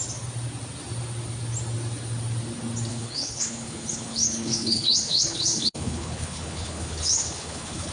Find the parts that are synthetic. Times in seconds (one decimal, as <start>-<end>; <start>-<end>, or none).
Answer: 2.9-7.9